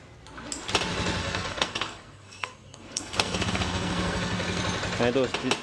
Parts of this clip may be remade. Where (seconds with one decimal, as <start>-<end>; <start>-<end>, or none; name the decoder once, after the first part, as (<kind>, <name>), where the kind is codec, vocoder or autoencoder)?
1.2-4.6 (codec, SNAC)